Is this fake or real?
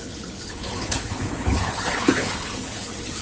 fake